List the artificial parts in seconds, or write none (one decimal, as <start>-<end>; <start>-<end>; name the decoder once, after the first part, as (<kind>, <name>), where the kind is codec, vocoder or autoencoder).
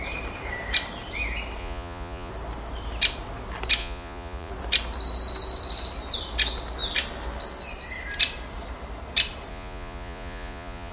1.6-2.3 (vocoder, Vocos); 3.8-4.5; 9.5-10.9